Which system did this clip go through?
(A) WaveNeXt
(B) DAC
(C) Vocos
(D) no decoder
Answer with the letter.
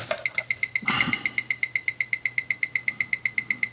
D